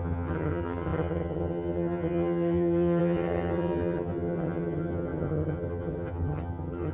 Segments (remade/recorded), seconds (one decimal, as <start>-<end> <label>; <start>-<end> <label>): 0.0-6.9 remade